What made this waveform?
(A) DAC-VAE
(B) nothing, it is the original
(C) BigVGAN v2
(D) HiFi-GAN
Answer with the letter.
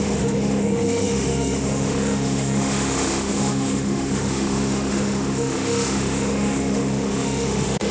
A